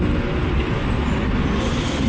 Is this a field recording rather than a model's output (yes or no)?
yes